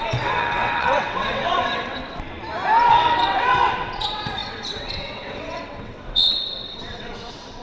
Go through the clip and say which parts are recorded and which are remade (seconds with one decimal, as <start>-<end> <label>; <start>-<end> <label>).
0.0-2.0 remade; 2.0-2.9 recorded; 2.9-7.6 remade